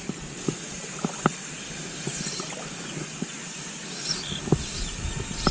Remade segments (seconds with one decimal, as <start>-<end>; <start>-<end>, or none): 0.0-4.8